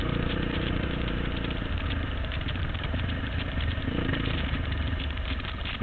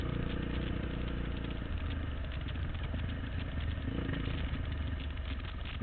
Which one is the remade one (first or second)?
first